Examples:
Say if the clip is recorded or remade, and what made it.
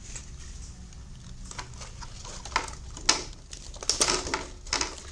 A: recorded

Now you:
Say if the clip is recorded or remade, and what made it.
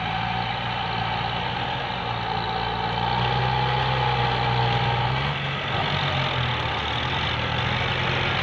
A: recorded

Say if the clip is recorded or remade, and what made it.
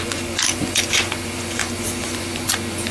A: remade, vocoder, Vocos